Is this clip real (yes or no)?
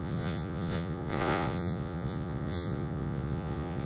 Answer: no